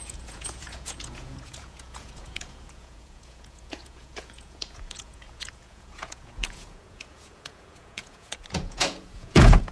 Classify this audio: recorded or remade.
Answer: remade